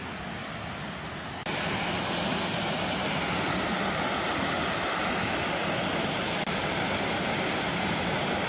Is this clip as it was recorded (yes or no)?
yes